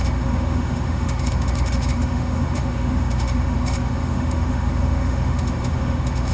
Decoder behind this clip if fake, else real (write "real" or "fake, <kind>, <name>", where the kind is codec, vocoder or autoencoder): fake, autoencoder, DAC-VAE